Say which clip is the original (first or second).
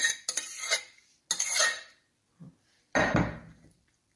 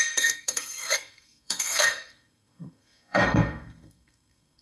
first